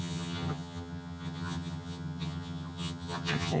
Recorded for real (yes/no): no